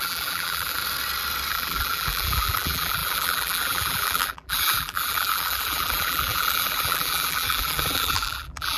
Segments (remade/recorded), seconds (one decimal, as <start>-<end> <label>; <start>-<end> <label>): 0.0-0.8 remade; 0.8-1.5 recorded; 1.5-8.8 remade